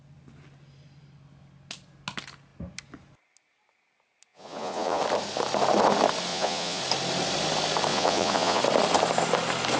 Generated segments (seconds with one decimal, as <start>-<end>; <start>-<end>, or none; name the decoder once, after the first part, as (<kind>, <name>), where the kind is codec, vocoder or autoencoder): 4.3-5.0 (vocoder, Vocos); 6.3-6.8; 7.9-8.6